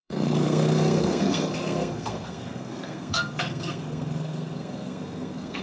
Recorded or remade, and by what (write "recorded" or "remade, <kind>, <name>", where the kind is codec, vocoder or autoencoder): remade, codec, SNAC